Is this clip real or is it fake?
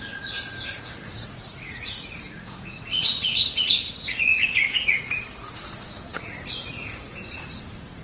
fake